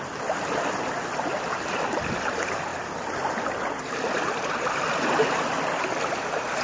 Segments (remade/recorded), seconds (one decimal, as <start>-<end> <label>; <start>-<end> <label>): 0.0-6.6 recorded